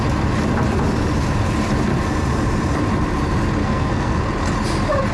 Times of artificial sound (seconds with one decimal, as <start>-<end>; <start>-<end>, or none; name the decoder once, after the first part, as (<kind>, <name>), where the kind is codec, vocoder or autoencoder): 3.6-4.2 (codec, SNAC)